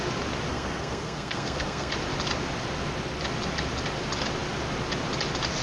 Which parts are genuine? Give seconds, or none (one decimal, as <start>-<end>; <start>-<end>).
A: 0.0-0.5; 1.9-5.6